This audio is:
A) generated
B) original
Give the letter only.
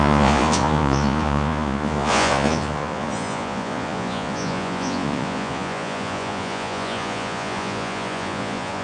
A